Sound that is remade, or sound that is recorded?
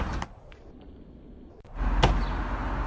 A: recorded